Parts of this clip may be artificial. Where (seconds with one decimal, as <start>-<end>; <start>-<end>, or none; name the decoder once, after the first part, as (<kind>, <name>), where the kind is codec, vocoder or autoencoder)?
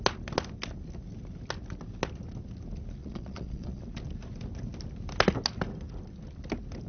3.0-3.8 (vocoder, Vocos)